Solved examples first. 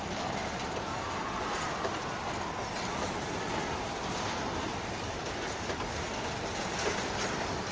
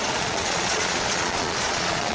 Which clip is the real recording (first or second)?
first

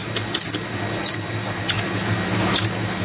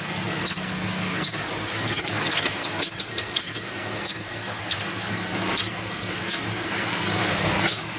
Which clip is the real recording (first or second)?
first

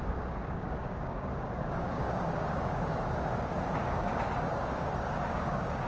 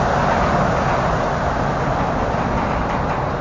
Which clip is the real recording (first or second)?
second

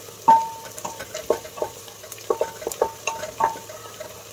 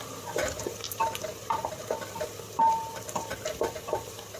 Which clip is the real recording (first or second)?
first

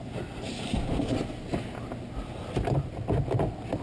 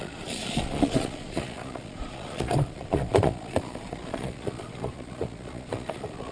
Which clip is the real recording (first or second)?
first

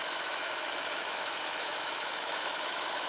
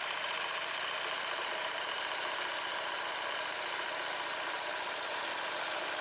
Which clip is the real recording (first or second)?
second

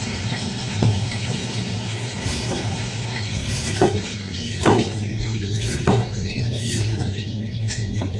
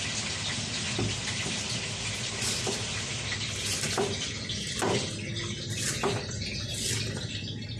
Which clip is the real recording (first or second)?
second